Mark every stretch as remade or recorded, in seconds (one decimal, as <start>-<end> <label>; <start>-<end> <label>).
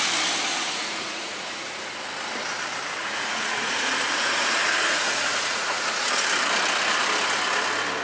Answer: 0.0-0.5 recorded; 0.5-1.8 remade; 1.8-3.0 recorded; 3.0-6.1 remade; 6.1-8.0 recorded